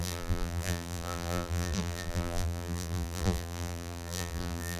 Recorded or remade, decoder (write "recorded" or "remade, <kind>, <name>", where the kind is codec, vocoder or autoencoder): remade, vocoder, BigVGAN v2